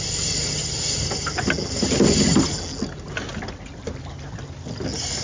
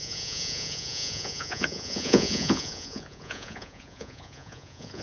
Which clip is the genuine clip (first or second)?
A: first